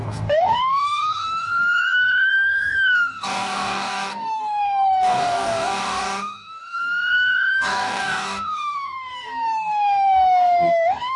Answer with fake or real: fake